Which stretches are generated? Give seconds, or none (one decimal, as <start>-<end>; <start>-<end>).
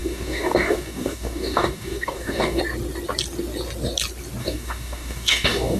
0.0-2.6; 4.4-5.8